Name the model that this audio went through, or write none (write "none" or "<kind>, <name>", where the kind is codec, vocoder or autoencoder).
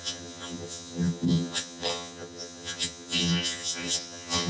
vocoder, HiFi-GAN